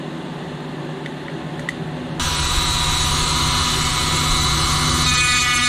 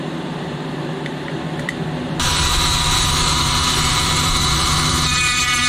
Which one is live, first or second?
first